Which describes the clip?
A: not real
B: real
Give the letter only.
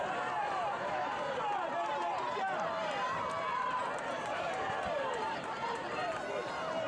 A